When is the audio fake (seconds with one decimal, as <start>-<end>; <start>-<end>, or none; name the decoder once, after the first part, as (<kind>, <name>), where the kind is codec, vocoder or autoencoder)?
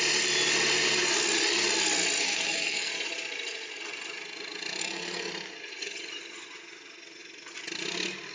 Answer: 2.2-2.9 (codec, SNAC); 4.8-5.3